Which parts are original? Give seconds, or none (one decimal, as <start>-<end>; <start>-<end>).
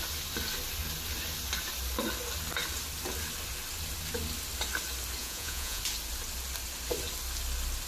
0.0-5.2; 5.8-7.9